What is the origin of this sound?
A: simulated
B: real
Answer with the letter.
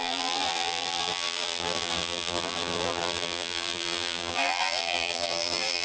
A